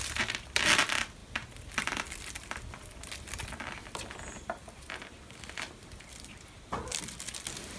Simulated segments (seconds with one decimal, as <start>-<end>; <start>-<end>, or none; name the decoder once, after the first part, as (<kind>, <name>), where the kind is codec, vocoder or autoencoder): none